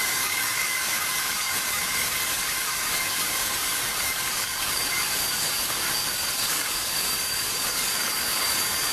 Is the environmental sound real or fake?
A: fake